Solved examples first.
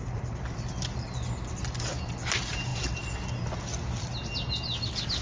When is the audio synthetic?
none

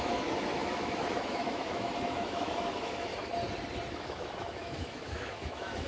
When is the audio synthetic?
0.0-3.1 (autoencoder, DAC-VAE); 3.9-5.9

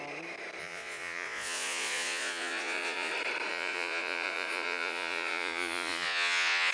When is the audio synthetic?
0.6-3.1 (vocoder, Vocos); 3.5-6.7